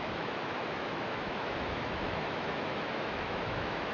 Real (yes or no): no